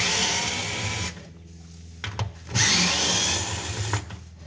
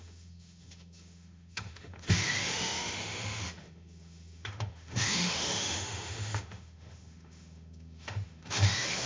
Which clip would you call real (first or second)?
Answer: first